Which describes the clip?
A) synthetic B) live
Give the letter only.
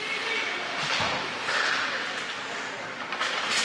B